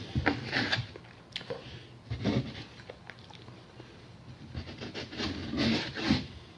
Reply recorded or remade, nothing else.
recorded